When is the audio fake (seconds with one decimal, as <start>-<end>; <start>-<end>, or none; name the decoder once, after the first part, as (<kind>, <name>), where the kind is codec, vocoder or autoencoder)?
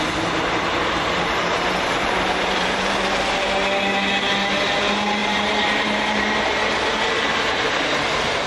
0.0-3.6 (vocoder, BigVGAN v2); 4.8-8.5